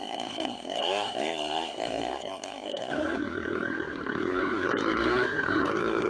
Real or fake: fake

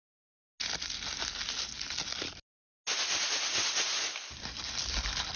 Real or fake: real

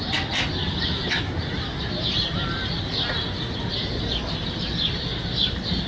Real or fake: real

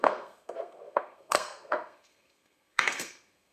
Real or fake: fake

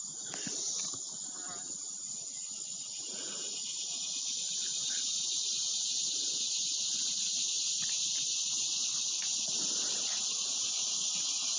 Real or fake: real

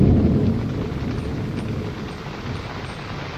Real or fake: real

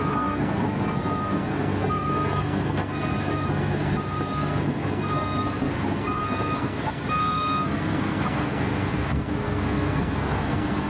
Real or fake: fake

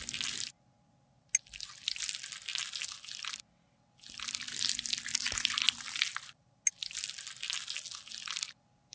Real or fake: real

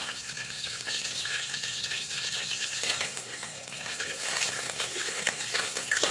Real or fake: fake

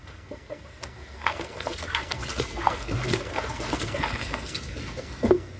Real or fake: fake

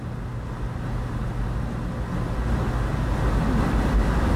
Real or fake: real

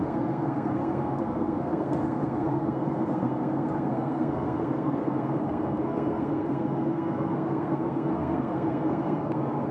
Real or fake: fake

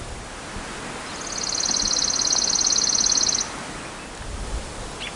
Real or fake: real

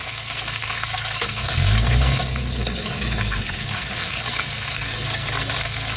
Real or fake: fake